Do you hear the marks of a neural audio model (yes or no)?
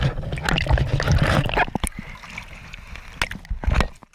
no